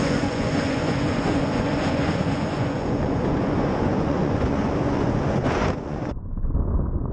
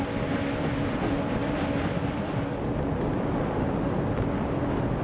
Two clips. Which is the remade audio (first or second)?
first